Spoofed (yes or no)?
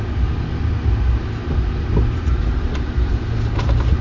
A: no